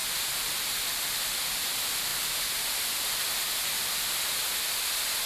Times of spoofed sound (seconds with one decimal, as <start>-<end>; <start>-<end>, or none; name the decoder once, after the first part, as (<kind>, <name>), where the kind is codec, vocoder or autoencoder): 0.0-0.5 (vocoder, BigVGAN v2); 2.1-3.4